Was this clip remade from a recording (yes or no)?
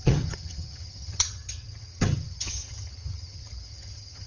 yes